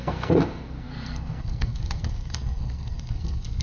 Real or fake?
fake